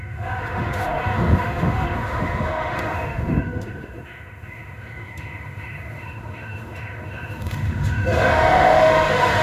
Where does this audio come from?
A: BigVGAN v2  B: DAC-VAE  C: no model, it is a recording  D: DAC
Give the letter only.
B